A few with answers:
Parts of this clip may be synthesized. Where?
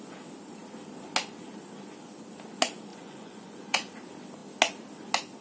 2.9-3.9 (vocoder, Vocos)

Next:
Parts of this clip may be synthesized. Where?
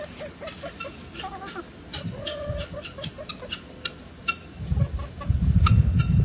none